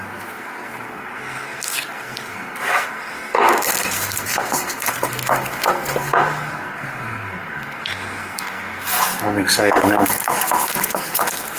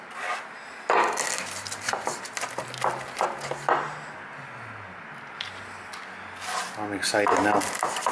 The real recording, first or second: second